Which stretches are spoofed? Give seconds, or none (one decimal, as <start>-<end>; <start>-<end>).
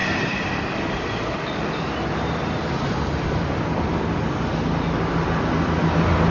none